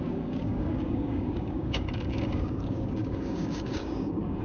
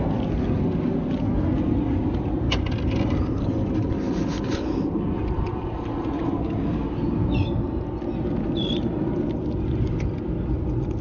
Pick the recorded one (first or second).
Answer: second